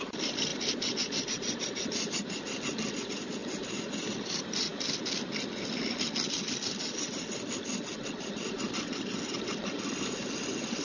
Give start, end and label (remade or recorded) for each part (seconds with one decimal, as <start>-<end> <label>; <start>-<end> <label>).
0.0-10.8 recorded